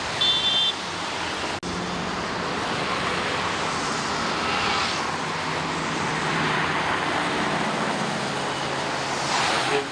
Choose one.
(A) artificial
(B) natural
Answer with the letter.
B